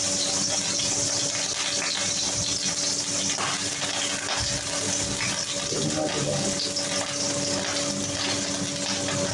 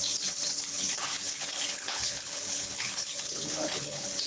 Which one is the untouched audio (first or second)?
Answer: first